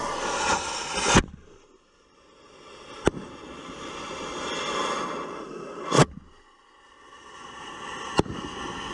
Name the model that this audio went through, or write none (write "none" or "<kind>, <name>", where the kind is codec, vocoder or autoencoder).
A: none